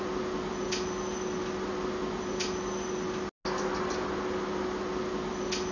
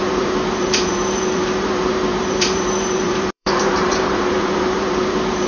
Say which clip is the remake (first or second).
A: second